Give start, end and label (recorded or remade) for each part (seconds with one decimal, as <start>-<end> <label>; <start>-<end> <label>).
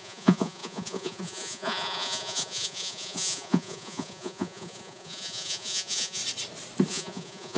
0.0-6.2 remade; 6.2-6.9 recorded; 6.9-7.6 remade